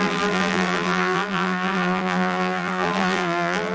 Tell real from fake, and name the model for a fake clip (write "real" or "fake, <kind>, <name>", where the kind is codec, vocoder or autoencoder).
fake, vocoder, BigVGAN v2